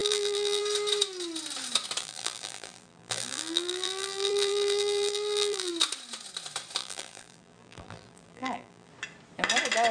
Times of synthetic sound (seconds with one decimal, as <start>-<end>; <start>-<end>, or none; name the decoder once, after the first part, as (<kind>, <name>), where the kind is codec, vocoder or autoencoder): 0.0-0.6 (vocoder, BigVGAN v2); 2.0-5.7; 6.8-8.9